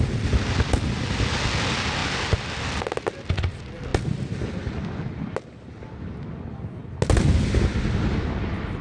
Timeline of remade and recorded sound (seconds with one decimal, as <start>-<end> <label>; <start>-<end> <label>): 0.0-8.8 recorded